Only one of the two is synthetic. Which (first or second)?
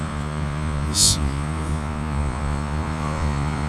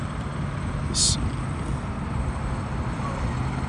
first